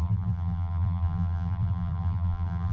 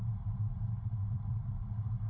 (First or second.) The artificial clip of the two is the first